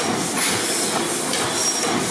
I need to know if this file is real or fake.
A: real